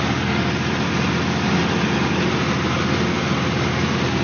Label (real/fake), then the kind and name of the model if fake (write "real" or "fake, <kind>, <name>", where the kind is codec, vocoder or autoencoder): real